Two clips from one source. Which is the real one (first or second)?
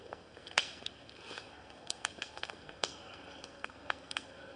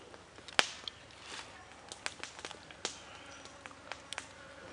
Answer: second